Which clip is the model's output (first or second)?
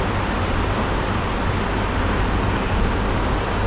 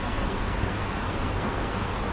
second